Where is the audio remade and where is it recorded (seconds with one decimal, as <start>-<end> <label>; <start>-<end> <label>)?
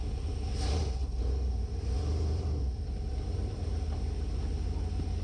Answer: 0.0-1.0 recorded; 1.0-4.1 remade; 4.1-5.2 recorded